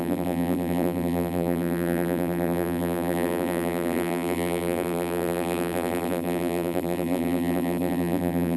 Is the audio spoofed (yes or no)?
yes